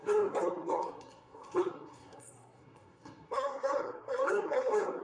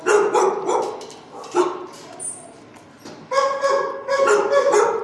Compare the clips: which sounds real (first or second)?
second